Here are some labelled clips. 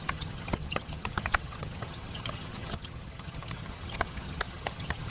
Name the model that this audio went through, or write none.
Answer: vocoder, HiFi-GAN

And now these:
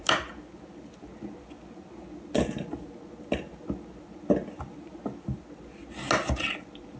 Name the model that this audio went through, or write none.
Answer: none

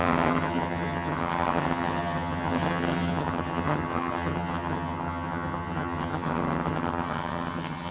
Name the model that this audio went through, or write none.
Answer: vocoder, HiFi-GAN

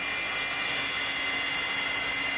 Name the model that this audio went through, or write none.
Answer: none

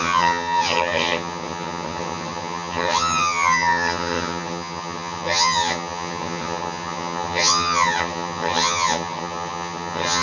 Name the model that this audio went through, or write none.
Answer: vocoder, HiFi-GAN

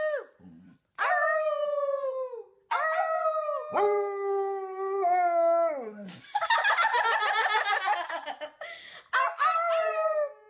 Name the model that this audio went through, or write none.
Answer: none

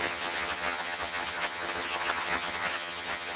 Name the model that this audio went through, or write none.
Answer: vocoder, HiFi-GAN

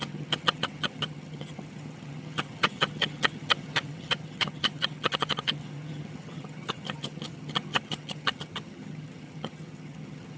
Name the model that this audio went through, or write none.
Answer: vocoder, HiFi-GAN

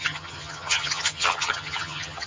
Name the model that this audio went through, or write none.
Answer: vocoder, HiFi-GAN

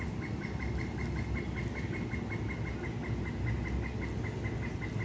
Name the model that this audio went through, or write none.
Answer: none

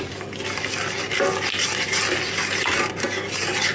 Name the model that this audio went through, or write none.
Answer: none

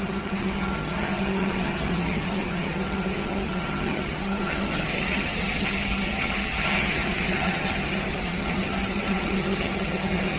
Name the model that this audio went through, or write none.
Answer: vocoder, HiFi-GAN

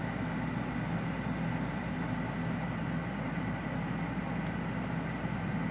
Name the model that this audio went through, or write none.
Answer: none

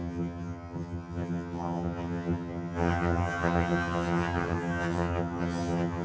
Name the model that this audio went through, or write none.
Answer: vocoder, HiFi-GAN